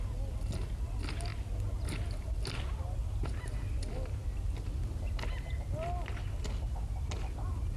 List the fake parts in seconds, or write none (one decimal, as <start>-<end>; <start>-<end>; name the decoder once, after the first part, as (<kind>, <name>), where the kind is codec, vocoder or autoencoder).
none